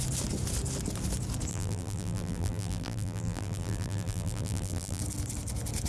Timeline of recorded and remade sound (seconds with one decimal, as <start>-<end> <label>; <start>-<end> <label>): 0.0-1.5 recorded; 1.5-5.0 remade; 5.0-5.9 recorded